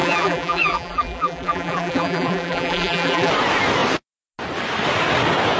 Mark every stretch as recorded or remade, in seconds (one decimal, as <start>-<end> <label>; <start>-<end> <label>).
0.0-3.3 remade; 3.3-5.6 recorded